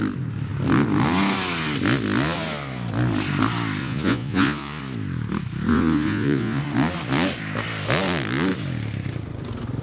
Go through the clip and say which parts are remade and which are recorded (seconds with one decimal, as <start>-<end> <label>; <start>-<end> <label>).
0.0-3.8 recorded; 3.8-4.8 remade; 4.8-5.7 recorded; 5.7-6.6 remade; 6.6-9.8 recorded